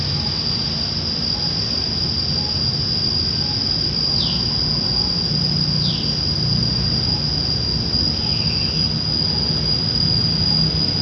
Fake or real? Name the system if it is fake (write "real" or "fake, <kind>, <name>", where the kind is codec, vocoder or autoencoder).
real